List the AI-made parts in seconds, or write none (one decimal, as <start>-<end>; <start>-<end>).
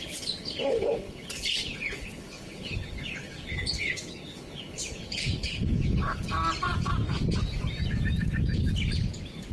0.0-6.3